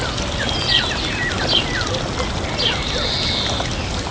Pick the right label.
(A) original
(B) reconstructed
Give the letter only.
A